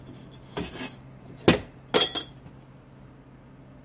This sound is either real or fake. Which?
real